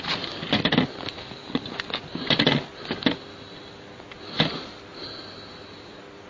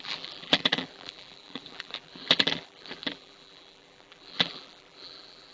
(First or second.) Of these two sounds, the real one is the first